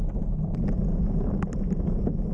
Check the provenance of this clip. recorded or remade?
recorded